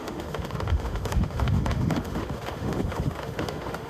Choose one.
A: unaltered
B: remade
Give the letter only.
B